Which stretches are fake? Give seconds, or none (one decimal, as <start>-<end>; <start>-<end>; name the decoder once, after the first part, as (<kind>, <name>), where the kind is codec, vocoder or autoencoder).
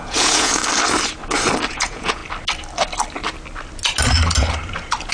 0.0-0.6 (vocoder, Vocos); 1.7-2.2